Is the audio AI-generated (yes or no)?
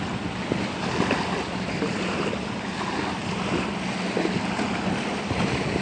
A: no